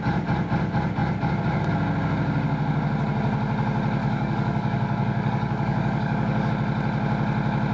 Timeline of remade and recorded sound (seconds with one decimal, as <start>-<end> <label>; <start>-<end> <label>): 0.0-4.0 recorded; 4.0-6.5 remade; 6.5-7.7 recorded